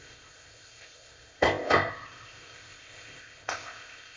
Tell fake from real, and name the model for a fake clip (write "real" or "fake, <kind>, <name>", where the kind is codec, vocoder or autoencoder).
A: fake, codec, ZipCodec